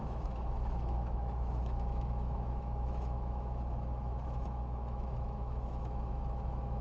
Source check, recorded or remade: remade